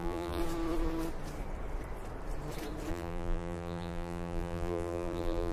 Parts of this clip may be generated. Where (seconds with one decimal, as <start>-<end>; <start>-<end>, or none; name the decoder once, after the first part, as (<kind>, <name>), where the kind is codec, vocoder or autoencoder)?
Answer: 0.0-0.4 (vocoder, BigVGAN v2); 2.9-5.5